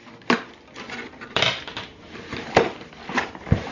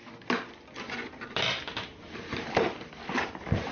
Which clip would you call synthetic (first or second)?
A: first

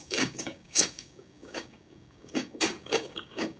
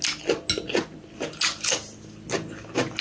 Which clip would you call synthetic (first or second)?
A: first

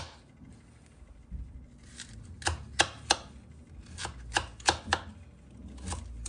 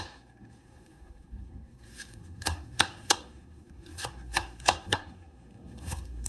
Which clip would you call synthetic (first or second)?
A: second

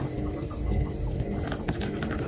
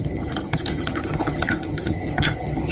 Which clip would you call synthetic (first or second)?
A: second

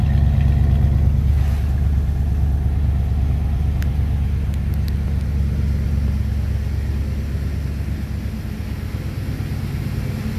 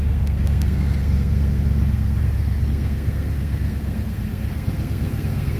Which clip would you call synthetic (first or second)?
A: second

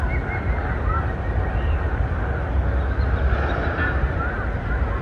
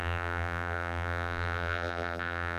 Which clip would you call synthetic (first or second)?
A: second